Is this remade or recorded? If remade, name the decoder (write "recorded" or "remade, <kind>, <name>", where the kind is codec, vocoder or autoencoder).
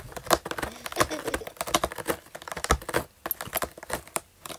recorded